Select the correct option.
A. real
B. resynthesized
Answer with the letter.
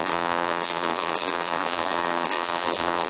B